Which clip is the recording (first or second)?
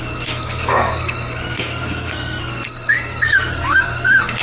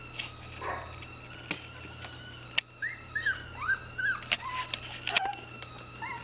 second